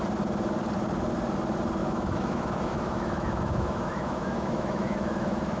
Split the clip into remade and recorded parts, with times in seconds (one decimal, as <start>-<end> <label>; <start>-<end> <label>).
0.0-1.8 recorded; 1.8-5.6 remade

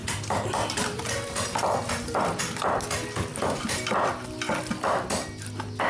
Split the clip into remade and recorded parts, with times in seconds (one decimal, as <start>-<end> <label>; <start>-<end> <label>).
0.0-2.4 remade; 2.4-5.9 recorded

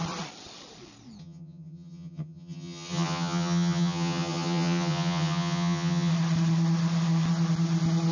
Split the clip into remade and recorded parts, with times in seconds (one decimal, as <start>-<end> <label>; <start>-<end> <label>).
0.0-1.2 recorded; 1.2-6.1 remade; 6.1-8.1 recorded

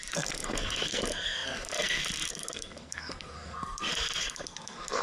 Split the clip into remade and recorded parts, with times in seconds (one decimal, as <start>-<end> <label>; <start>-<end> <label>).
0.0-5.0 remade

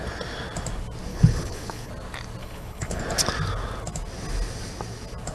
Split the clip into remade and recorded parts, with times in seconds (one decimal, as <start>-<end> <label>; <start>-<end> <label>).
0.0-1.1 recorded; 1.1-1.9 remade; 1.9-2.4 recorded; 2.4-3.0 remade; 3.0-5.3 recorded

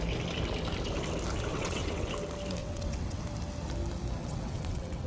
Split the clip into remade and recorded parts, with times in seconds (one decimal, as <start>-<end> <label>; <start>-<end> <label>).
0.0-1.5 recorded; 1.5-2.1 remade; 2.1-2.6 recorded; 2.6-3.2 remade; 3.2-4.2 recorded; 4.2-5.1 remade

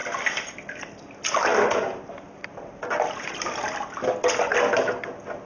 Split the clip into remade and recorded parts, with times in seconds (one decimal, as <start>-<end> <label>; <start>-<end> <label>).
0.0-5.5 recorded